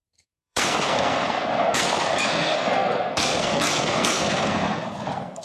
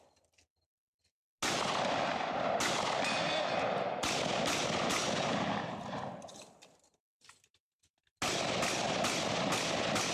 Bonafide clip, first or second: second